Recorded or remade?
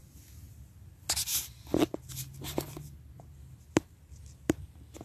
recorded